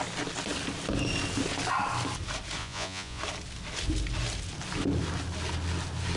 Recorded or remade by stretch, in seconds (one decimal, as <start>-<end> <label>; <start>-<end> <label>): 0.0-2.6 recorded; 2.6-3.2 remade; 3.2-6.2 recorded